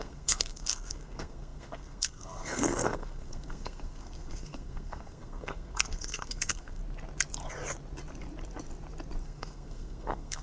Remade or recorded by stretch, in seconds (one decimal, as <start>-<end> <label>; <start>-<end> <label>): 0.0-6.8 remade; 6.8-9.2 recorded; 9.2-10.4 remade